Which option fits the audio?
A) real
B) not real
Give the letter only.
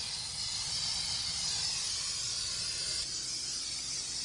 A